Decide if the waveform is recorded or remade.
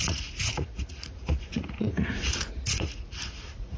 remade